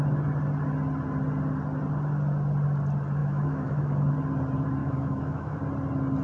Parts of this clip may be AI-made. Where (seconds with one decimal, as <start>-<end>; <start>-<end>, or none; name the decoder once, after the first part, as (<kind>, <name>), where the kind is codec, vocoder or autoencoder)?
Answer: 3.2-4.1 (autoencoder, DAC-VAE); 4.8-5.6